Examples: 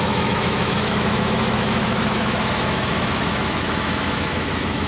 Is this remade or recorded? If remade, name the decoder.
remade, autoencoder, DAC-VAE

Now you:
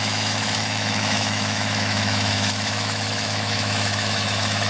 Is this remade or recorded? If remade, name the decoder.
remade, autoencoder, DAC-VAE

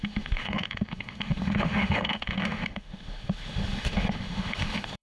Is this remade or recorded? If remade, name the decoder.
remade, autoencoder, DAC-VAE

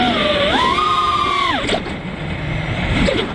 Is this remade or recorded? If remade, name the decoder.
recorded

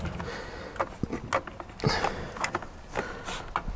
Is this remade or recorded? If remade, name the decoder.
recorded